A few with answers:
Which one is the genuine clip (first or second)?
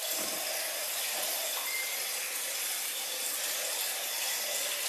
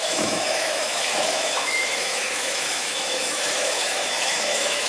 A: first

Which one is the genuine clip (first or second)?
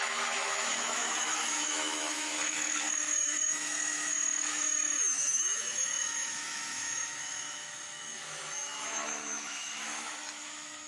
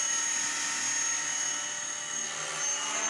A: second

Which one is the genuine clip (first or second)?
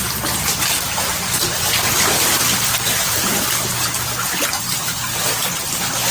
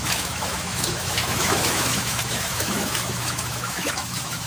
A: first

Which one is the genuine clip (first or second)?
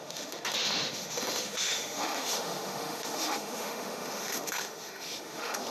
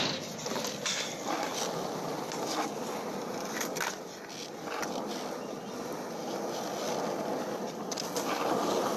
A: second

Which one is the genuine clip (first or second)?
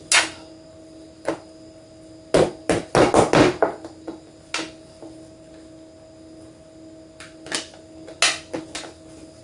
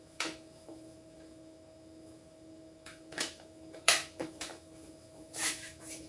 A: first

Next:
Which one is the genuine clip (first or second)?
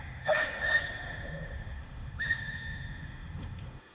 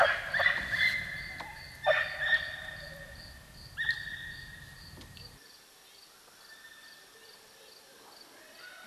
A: second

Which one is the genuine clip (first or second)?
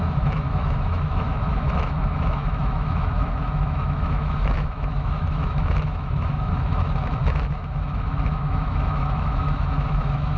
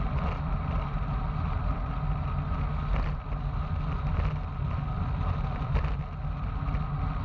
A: second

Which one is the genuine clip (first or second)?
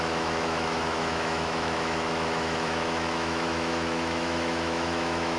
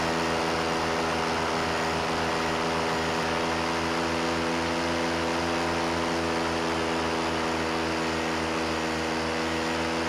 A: second